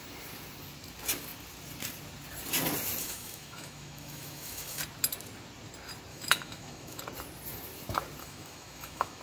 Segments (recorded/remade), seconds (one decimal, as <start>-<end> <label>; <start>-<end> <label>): 0.0-3.0 recorded; 3.0-4.8 remade; 4.8-6.1 recorded; 6.1-7.0 remade; 7.0-8.2 recorded; 8.2-9.2 remade